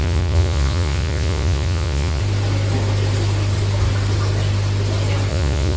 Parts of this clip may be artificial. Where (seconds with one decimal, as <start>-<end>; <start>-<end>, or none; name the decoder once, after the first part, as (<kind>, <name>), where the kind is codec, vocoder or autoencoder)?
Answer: 0.0-2.2 (vocoder, Vocos); 5.3-5.8